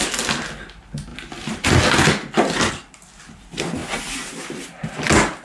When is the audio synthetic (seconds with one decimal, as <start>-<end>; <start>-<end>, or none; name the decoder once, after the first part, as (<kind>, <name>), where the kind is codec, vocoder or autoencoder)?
none